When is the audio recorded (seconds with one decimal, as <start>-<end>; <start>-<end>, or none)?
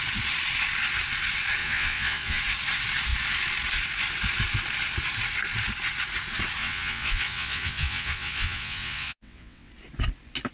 0.0-1.6; 2.4-6.6; 9.7-10.5